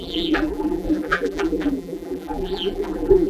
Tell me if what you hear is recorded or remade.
remade